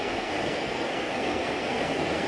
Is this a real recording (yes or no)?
no